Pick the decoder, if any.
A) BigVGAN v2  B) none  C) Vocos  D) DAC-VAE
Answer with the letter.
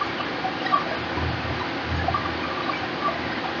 B